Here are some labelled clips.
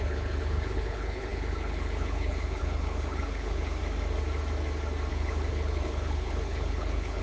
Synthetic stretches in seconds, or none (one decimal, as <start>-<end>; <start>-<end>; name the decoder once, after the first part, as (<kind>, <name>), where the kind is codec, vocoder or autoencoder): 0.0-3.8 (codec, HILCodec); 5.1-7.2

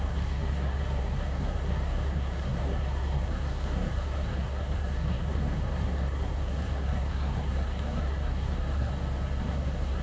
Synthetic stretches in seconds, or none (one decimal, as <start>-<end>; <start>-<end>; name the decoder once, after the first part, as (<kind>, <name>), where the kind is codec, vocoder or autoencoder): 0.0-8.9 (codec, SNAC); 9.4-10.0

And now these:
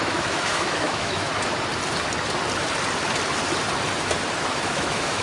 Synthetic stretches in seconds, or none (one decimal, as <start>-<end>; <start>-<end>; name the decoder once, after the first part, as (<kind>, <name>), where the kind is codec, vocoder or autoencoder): 0.0-1.3 (autoencoder, DAC-VAE); 4.4-5.2